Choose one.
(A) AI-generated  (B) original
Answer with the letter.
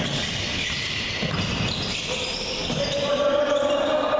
B